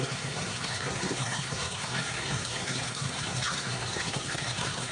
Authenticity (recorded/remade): remade